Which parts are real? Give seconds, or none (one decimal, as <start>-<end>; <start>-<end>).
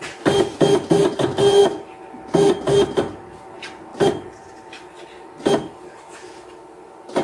0.0-3.9; 5.0-7.2